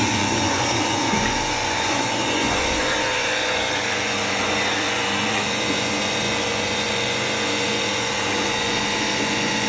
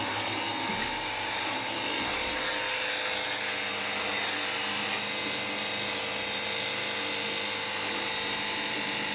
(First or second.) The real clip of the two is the second